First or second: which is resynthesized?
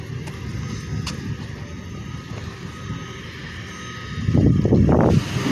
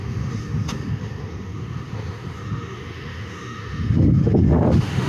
second